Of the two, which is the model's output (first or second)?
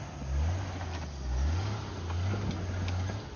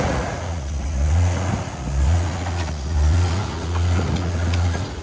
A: second